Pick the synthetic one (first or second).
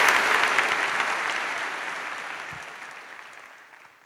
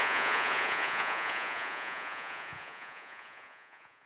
second